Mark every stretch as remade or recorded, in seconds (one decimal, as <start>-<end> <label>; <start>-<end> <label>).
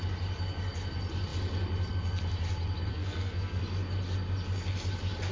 0.0-2.9 recorded; 2.9-3.6 remade; 3.6-5.3 recorded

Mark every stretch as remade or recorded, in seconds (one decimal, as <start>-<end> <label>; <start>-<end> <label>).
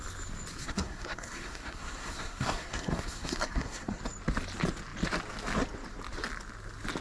0.0-0.6 recorded; 0.6-4.0 remade; 4.0-7.0 recorded